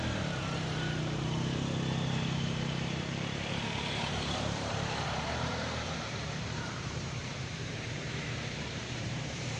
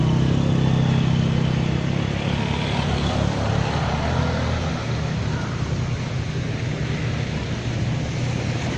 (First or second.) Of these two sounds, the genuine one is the second